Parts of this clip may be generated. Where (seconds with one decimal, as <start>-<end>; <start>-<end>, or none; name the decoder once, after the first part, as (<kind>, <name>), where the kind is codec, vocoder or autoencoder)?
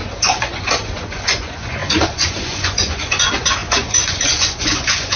0.0-5.2 (vocoder, Vocos)